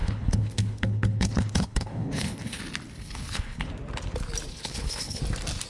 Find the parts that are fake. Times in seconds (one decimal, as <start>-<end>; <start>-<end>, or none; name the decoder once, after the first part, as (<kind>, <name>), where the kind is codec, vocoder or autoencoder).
0.0-2.6 (codec, HILCodec); 3.0-3.7; 4.5-5.2